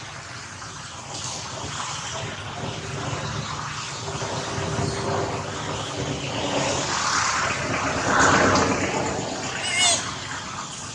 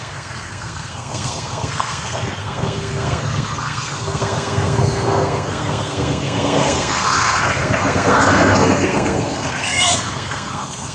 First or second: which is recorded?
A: first